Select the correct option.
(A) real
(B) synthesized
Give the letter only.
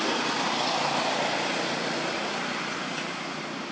A